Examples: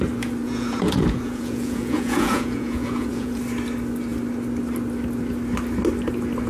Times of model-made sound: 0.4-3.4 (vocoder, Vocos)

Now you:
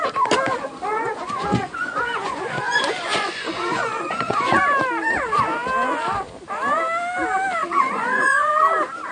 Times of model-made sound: 0.9-4.6 (vocoder, Vocos); 7.6-8.5

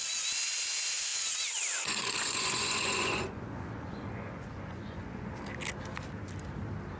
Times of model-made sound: 1.1-5.3 (vocoder, Vocos)

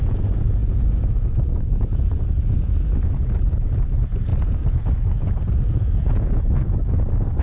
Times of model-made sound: 0.0-7.4 (vocoder, Vocos)